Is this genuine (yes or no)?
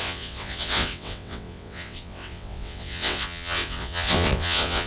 no